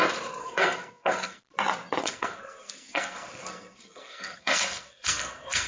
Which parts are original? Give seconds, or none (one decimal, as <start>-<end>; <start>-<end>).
0.0-0.4; 1.4-2.0